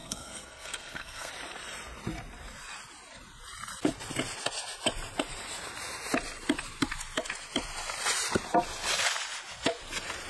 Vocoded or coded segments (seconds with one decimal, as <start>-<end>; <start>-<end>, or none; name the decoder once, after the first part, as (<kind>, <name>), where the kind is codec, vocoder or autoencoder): 0.0-1.3 (codec, SNAC)